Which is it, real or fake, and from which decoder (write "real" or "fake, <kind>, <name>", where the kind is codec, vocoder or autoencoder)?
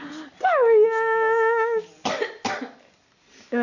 real